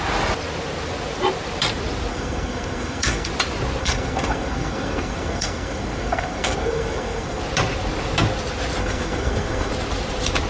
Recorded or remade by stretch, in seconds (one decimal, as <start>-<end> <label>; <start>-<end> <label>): 0.0-2.1 recorded; 2.1-3.3 remade; 3.3-3.8 recorded; 3.8-7.4 remade; 7.4-8.8 recorded; 8.8-9.7 remade; 9.7-10.5 recorded